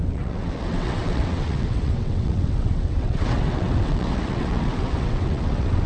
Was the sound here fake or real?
fake